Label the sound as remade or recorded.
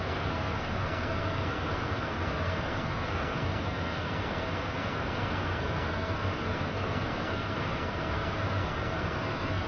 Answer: remade